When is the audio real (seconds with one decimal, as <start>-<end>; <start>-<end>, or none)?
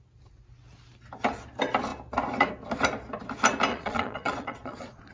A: 0.0-3.7